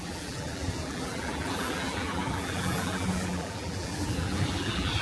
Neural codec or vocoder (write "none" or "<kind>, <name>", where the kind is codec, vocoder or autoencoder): vocoder, BigVGAN v2